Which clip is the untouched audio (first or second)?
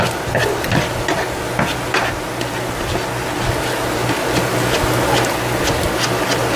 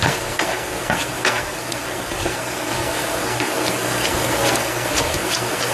first